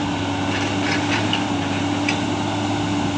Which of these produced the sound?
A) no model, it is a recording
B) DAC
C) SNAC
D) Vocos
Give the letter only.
A